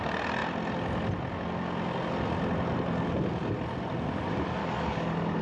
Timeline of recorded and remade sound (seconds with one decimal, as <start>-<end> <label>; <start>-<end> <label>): 0.0-4.6 recorded; 4.6-5.4 remade